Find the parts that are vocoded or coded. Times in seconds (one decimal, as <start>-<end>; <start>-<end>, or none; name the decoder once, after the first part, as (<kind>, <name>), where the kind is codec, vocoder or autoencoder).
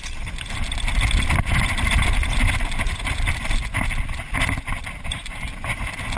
none